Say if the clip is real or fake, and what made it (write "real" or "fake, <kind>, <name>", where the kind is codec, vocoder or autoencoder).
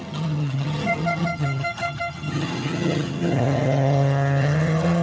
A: fake, vocoder, HiFi-GAN